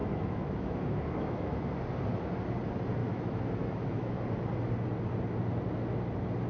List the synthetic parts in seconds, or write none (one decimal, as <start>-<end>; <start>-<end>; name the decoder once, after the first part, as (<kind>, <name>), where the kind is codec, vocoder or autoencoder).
0.0-1.6 (autoencoder, DAC-VAE); 3.0-4.1